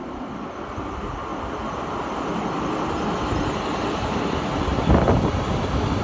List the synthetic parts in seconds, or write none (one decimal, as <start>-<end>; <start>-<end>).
none